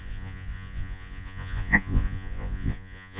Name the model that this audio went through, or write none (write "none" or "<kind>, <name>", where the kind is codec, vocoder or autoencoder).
vocoder, Vocos